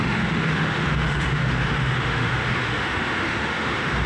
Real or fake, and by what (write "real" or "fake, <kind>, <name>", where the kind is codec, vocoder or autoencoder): fake, autoencoder, DAC-VAE